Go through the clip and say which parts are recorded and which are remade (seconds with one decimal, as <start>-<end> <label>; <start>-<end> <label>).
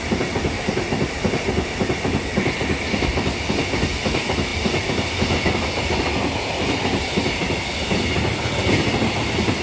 0.0-9.6 recorded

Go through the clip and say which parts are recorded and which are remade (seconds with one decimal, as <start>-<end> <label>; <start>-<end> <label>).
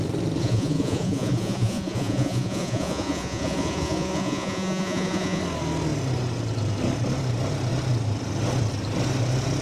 0.0-0.4 recorded; 0.4-5.4 remade; 5.4-9.6 recorded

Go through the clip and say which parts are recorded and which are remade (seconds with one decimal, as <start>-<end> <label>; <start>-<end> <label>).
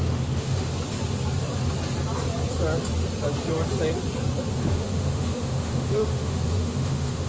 0.0-0.7 remade; 0.7-4.6 recorded; 4.6-7.3 remade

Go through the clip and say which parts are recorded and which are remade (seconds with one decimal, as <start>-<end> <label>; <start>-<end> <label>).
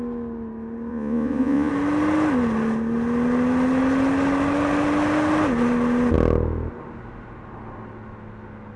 0.0-0.9 recorded; 0.9-1.7 remade; 1.7-8.8 recorded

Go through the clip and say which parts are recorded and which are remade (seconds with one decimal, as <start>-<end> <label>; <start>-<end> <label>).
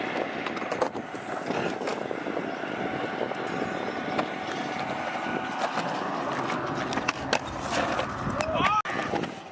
0.0-9.5 recorded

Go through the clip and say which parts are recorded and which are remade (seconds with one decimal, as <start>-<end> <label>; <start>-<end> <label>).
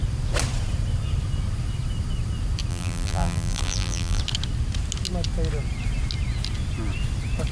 0.0-2.7 recorded; 2.7-4.2 remade; 4.2-7.5 recorded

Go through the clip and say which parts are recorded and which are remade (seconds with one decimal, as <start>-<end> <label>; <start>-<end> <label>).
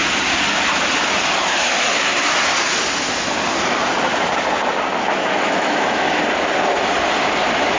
0.0-5.1 recorded; 5.1-6.2 remade; 6.2-7.8 recorded